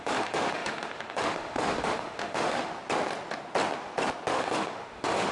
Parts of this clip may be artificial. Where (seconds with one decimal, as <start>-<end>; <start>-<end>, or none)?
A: 0.0-2.7; 4.3-5.3